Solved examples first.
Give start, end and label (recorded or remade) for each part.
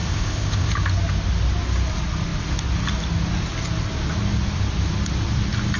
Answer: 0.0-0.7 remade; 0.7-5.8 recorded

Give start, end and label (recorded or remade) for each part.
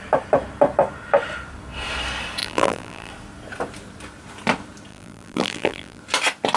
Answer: 0.0-2.4 recorded; 2.4-3.1 remade; 3.1-4.9 recorded; 4.9-6.0 remade; 6.0-6.6 recorded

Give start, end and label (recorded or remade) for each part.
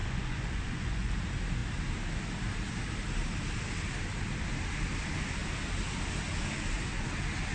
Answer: 0.0-1.1 remade; 1.1-7.5 recorded